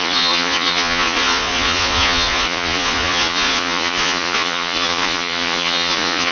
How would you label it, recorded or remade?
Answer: remade